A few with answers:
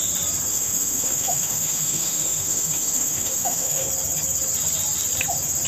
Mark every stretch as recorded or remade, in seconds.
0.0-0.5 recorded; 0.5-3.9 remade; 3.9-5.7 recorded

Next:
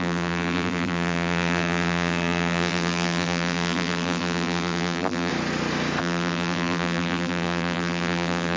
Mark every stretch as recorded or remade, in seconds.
0.0-5.3 remade; 5.3-6.0 recorded; 6.0-8.6 remade